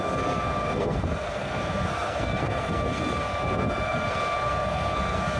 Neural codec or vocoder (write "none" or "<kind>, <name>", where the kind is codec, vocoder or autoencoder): codec, SNAC